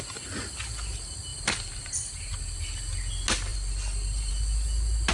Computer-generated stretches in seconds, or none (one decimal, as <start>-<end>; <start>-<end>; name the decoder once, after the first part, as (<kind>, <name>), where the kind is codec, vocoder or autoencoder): 1.3-2.3 (vocoder, BigVGAN v2); 3.5-4.3